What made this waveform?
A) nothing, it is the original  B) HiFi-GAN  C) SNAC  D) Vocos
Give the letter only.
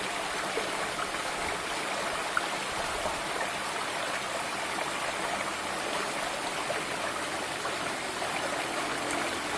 A